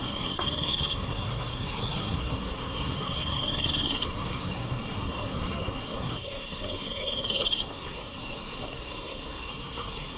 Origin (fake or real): fake